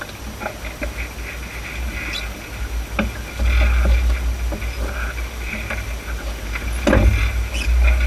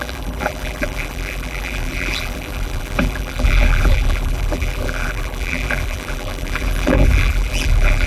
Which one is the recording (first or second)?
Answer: first